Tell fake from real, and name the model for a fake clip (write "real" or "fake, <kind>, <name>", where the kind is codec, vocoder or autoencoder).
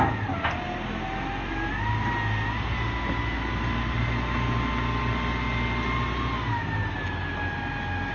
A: real